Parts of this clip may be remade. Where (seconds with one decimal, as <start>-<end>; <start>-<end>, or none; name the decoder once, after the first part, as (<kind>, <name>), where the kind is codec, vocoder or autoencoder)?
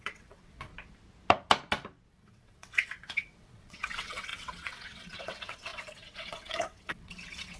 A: 0.0-0.7 (vocoder, WaveNeXt); 2.1-7.6